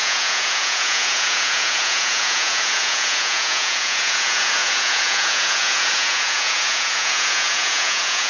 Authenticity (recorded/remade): remade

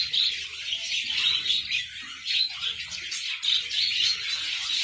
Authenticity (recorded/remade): recorded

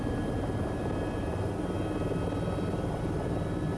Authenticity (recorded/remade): recorded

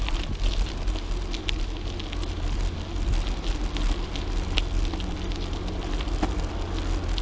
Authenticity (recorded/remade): recorded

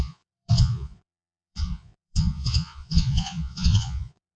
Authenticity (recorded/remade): remade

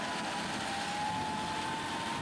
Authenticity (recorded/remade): recorded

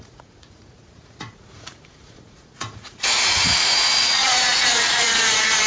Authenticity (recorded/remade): remade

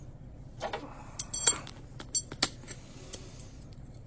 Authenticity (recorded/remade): recorded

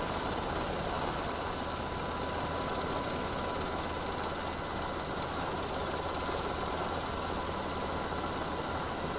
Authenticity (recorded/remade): recorded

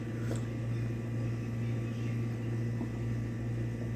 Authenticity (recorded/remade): recorded